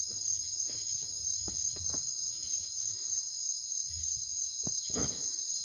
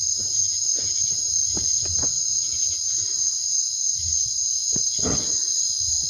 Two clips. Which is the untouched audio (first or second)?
second